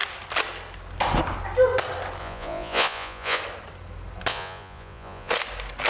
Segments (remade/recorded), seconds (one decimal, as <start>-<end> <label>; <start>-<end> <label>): 0.0-2.2 recorded; 2.2-3.4 remade; 3.4-4.3 recorded; 4.3-5.3 remade; 5.3-5.9 recorded